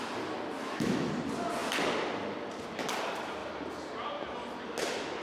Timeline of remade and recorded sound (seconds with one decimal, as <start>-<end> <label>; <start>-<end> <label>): 0.0-0.6 recorded; 0.6-1.1 remade; 1.1-5.2 recorded